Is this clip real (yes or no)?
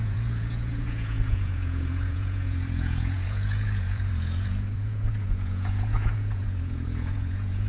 no